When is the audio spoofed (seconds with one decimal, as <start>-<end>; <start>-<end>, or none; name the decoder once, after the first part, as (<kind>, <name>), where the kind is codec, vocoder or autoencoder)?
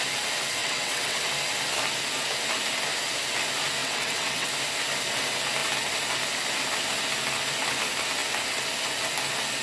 0.6-1.2 (vocoder, WaveNeXt); 3.8-4.5